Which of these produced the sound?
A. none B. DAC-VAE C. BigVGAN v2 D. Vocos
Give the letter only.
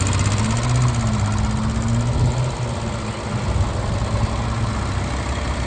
A